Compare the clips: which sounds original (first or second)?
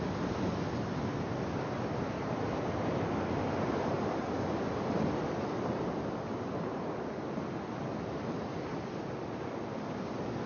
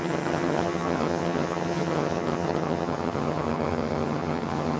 first